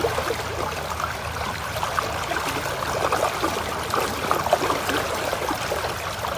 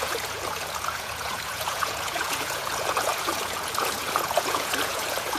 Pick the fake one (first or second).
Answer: second